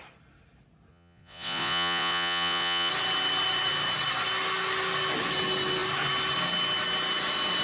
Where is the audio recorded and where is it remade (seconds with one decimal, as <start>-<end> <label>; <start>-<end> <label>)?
0.0-0.9 recorded; 0.9-2.9 remade; 2.9-7.6 recorded